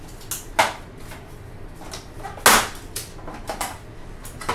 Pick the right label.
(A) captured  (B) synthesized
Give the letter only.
A